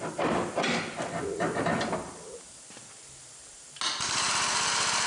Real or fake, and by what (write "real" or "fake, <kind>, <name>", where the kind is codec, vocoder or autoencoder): real